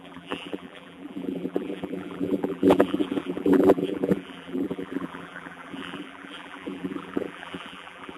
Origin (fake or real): fake